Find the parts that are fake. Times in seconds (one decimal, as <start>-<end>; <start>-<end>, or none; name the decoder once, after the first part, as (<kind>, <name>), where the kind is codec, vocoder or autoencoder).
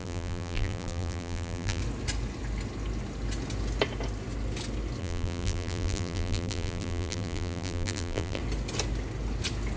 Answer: 0.0-1.8 (vocoder, BigVGAN v2); 5.0-8.4